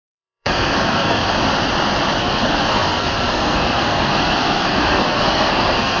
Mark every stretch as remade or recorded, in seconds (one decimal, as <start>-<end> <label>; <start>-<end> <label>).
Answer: 0.0-1.2 remade; 1.2-2.2 recorded; 2.2-6.0 remade